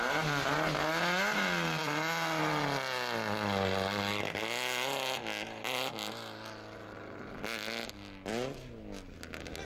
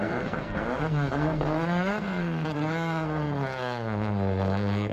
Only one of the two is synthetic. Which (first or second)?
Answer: second